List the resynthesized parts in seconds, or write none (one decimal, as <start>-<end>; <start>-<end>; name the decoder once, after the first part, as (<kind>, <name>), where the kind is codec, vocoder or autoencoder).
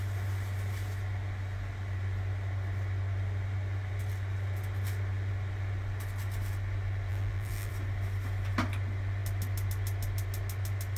7.1-7.7 (vocoder, BigVGAN v2)